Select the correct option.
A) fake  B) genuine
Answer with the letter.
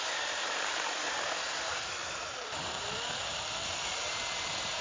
A